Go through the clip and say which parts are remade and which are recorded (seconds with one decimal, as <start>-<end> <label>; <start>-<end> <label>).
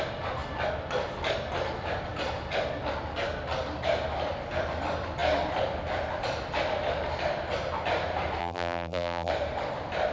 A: 0.0-8.4 recorded; 8.4-9.3 remade; 9.3-10.1 recorded